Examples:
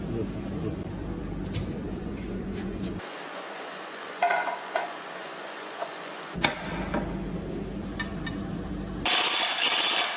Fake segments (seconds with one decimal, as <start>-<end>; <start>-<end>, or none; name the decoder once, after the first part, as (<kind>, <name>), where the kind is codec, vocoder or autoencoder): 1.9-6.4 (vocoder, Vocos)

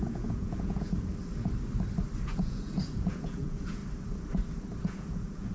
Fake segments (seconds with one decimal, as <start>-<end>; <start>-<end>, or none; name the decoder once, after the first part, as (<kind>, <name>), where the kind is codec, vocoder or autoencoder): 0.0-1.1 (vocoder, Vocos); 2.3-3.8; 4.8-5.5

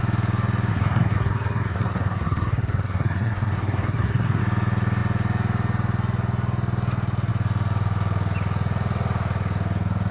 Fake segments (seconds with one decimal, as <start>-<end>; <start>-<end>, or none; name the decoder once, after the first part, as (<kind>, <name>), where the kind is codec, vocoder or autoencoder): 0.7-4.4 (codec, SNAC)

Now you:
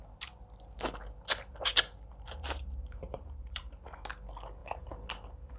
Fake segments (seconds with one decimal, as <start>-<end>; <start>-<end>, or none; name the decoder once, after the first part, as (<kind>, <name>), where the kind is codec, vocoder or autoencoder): 1.7-3.6 (vocoder, BigVGAN v2); 4.6-5.1

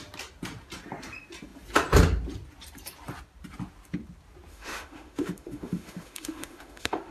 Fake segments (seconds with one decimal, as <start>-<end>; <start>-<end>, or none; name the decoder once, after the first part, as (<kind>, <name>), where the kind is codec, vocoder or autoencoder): 4.5-7.1 (autoencoder, DAC-VAE)

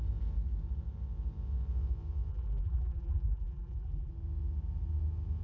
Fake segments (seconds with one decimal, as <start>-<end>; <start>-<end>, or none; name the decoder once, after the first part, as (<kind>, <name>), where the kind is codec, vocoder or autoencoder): 2.3-4.1 (vocoder, BigVGAN v2)